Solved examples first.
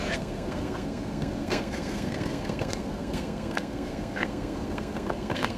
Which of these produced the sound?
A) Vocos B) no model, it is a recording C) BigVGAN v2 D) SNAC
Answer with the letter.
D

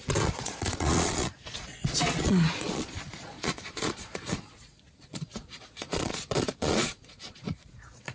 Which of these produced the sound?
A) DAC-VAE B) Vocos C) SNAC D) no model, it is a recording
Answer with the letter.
B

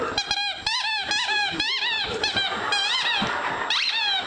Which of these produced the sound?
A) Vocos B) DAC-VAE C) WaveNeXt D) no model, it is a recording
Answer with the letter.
D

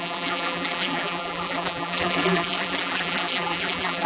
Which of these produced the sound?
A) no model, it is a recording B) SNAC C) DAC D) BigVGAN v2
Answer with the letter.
D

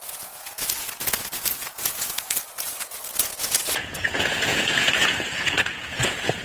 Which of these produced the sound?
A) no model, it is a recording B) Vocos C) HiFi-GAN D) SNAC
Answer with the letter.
B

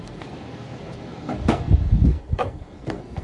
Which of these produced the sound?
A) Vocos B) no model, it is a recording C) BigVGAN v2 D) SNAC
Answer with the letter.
D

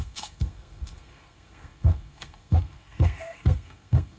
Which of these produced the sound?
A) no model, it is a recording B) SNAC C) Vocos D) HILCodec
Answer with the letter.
B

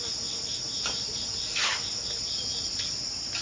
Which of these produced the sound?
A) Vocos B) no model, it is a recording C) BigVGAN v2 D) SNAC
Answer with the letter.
B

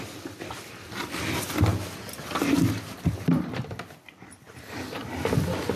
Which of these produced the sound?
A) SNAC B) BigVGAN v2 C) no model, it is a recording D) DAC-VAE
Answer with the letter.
C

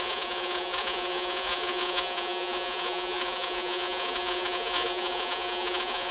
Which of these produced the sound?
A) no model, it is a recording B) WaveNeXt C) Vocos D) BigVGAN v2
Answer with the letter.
C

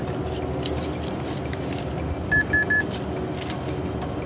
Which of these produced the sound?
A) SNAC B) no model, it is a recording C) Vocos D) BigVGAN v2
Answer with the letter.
B